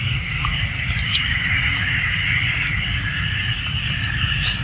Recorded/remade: recorded